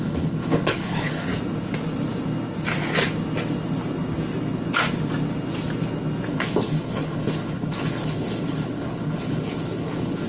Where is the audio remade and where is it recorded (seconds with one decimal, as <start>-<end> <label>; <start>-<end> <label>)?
0.0-1.3 remade; 1.3-6.3 recorded; 6.3-10.3 remade